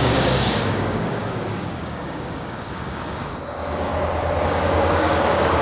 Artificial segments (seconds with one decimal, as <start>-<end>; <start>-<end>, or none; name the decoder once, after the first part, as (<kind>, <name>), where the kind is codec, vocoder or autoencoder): 0.0-3.9 (codec, DAC); 4.4-5.6